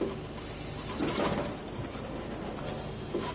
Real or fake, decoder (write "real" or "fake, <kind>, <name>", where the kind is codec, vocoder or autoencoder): real